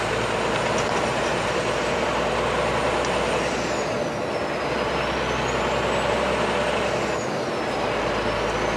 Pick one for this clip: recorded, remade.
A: recorded